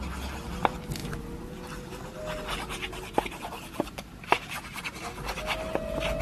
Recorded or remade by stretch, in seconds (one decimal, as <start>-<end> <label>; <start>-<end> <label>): 0.0-6.2 recorded